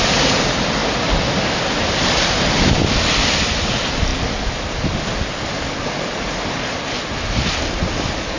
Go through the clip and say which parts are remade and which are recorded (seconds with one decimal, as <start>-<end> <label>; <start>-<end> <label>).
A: 0.0-8.4 recorded